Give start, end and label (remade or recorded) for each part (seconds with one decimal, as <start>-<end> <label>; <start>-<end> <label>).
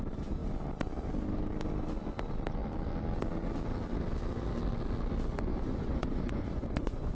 0.0-5.5 recorded; 5.5-7.1 remade